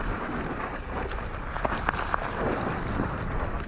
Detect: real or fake real